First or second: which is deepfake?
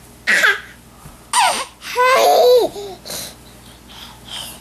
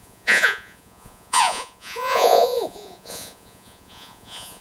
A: second